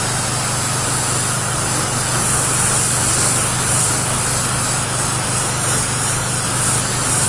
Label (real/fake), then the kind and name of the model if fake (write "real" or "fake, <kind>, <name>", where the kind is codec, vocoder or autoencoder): real